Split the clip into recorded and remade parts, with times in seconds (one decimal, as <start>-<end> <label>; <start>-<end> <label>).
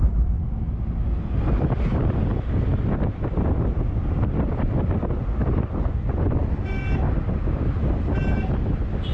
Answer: 0.0-2.7 recorded; 2.7-6.4 remade; 6.4-9.1 recorded